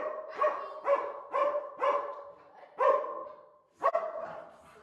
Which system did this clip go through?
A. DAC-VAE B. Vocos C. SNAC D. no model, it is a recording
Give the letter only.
D